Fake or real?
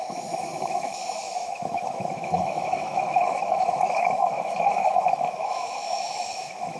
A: fake